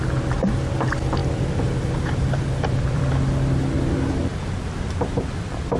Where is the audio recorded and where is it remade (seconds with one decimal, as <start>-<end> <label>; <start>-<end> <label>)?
0.0-1.2 recorded; 1.2-3.1 remade; 3.1-5.8 recorded